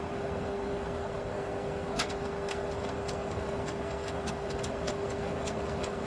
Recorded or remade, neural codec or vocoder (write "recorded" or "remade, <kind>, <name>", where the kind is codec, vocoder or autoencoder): remade, codec, SNAC